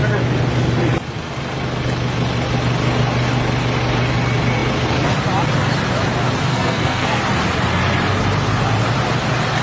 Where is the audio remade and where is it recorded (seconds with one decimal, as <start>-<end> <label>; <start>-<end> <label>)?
0.0-6.5 recorded; 6.5-7.2 remade; 7.2-9.6 recorded